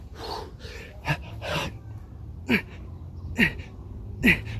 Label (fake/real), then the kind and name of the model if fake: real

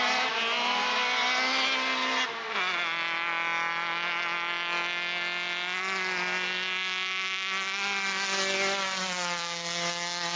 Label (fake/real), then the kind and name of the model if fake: real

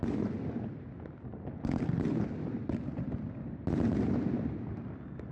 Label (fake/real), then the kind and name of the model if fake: real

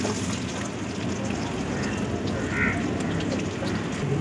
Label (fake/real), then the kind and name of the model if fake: real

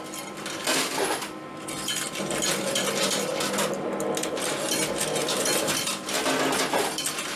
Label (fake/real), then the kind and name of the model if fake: real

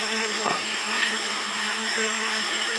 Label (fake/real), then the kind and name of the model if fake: fake, codec, SNAC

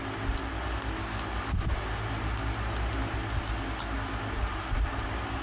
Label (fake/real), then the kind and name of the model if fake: real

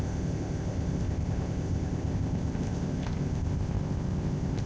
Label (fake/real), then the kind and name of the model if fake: fake, codec, ZipCodec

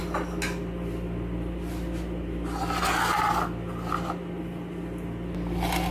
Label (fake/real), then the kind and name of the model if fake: real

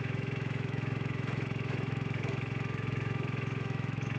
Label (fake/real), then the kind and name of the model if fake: fake, autoencoder, DAC-VAE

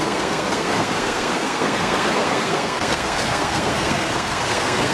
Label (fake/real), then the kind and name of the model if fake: fake, codec, SNAC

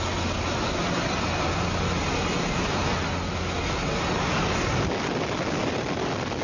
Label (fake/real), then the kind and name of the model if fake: real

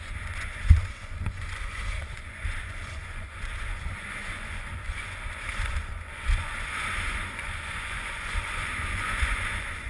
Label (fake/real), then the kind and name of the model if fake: fake, vocoder, Vocos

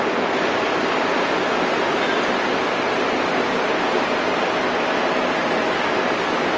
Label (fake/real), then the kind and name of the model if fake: real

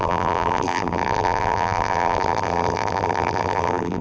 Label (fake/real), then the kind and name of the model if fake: fake, vocoder, BigVGAN v2